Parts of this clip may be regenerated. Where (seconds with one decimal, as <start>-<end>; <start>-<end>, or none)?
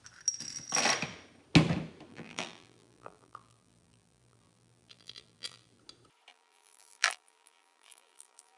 2.1-5.8; 6.3-8.6